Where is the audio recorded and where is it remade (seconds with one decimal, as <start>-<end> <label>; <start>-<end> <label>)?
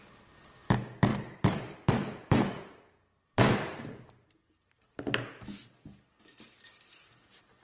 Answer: 0.0-1.1 recorded; 1.1-5.7 remade; 5.7-7.6 recorded